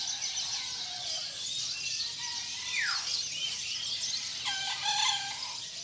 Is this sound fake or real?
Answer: real